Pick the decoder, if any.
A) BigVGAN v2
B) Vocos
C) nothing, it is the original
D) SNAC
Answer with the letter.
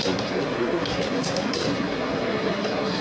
D